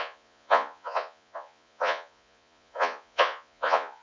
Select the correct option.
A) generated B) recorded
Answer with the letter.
A